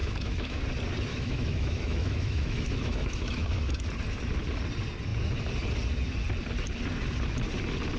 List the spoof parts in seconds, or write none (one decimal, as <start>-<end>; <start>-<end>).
0.0-0.6; 1.1-3.9